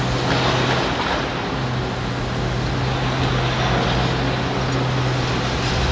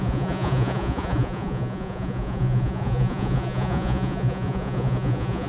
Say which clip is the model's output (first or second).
second